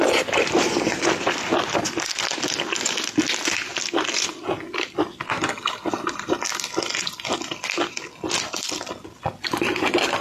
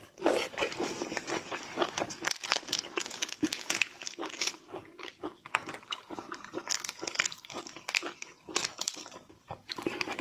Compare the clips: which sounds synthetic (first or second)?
second